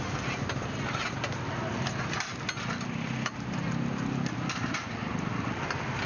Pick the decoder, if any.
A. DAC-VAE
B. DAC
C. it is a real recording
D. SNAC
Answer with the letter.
C